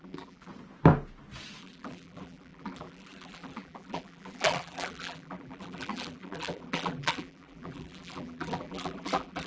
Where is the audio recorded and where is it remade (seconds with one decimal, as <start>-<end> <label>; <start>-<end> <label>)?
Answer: 0.0-0.5 remade; 0.5-1.6 recorded; 1.6-9.5 remade